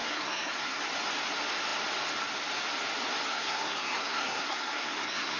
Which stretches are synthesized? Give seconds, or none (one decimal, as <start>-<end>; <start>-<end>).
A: 0.0-0.8; 3.3-5.4